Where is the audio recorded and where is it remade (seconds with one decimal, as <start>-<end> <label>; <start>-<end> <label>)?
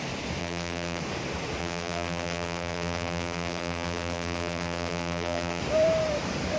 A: 0.0-0.4 recorded; 0.4-1.0 remade; 1.0-1.6 recorded; 1.6-5.6 remade; 5.6-6.6 recorded